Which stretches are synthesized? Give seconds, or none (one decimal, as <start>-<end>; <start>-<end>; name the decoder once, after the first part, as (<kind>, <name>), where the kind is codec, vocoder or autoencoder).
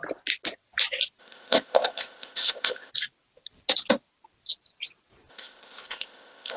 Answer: 1.2-2.9 (codec, ZipCodec); 5.3-6.6